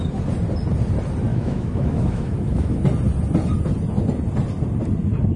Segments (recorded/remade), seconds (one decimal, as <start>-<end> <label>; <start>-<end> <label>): 0.0-1.3 recorded; 1.3-2.8 remade; 2.8-5.4 recorded